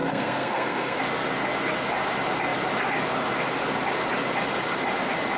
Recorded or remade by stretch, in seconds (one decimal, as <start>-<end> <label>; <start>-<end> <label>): 0.0-1.0 remade; 1.0-5.4 recorded